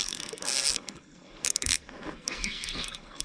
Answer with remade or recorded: remade